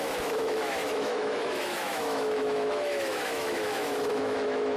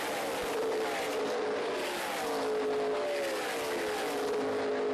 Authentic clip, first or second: second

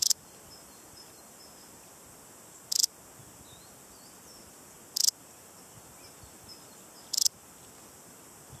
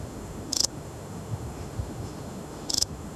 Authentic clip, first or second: first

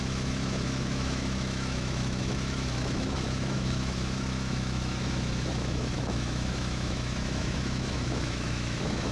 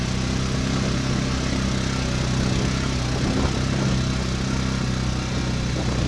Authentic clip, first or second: second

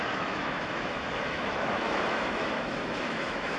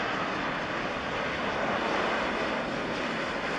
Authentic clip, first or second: second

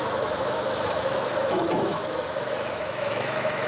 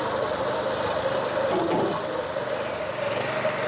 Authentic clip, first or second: second